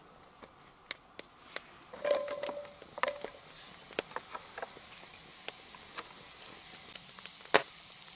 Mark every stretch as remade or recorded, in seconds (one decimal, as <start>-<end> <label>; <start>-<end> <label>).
0.0-8.2 recorded